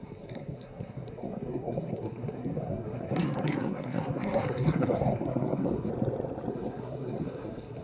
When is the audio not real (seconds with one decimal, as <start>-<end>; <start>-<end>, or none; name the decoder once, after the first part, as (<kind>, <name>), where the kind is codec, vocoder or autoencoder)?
0.0-5.9 (codec, SNAC); 6.5-7.8

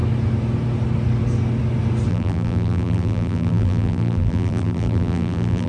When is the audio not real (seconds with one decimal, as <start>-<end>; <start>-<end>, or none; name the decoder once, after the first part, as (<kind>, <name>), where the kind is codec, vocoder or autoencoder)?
2.1-5.7 (vocoder, BigVGAN v2)

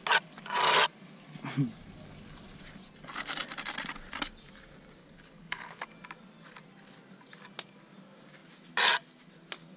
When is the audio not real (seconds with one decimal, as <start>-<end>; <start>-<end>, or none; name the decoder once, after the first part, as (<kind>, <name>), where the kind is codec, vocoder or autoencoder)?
5.0-5.8 (codec, HILCodec)

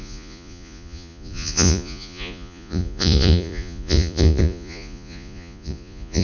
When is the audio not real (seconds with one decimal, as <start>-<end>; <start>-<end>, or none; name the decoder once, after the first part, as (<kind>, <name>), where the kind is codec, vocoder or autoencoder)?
0.0-6.2 (vocoder, Vocos)

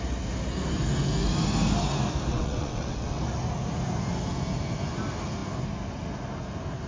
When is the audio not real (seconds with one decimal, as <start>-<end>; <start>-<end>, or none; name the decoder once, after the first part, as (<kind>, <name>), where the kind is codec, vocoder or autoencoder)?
2.3-3.2 (vocoder, WaveNeXt)

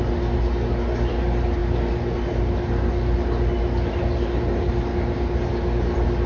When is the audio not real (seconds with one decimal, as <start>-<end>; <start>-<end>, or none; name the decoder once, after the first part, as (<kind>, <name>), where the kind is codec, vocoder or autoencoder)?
none

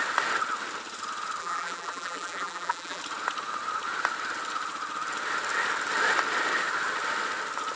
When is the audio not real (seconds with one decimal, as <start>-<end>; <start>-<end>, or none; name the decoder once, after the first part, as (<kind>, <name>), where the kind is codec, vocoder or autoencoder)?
1.4-3.0 (vocoder, BigVGAN v2)

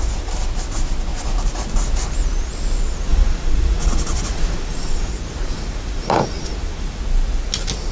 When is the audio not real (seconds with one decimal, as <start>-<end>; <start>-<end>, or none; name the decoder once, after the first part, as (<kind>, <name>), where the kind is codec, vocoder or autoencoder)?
3.1-5.1 (vocoder, Vocos); 5.5-7.0